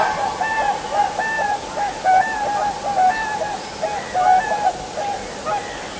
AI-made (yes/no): no